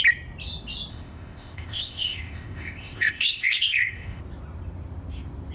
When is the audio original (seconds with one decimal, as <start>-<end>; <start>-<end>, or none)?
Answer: 0.0-0.9; 4.2-5.5